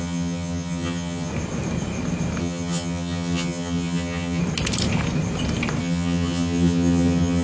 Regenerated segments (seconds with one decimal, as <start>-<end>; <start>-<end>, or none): 0.0-1.3; 2.4-4.4; 5.8-7.4